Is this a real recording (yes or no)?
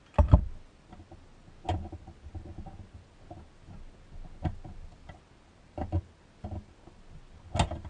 yes